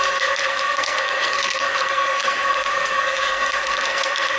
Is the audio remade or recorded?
remade